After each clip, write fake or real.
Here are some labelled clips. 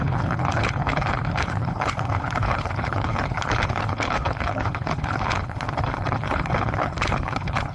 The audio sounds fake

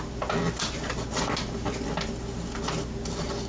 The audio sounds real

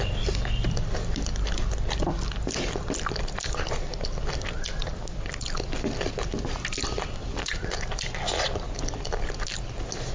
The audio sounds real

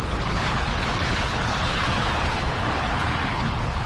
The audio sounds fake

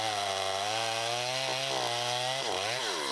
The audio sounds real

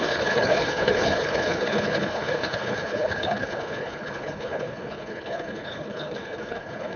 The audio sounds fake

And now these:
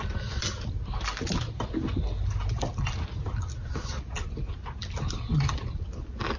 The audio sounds real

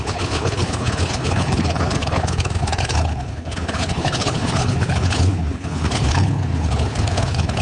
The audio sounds fake